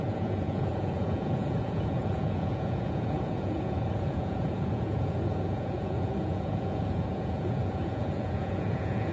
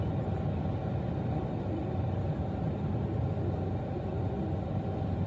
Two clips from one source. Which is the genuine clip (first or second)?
second